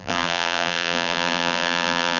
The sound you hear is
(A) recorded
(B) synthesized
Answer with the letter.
B